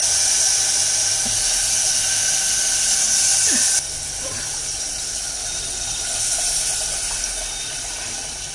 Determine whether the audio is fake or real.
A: real